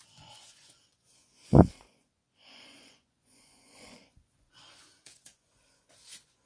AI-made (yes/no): yes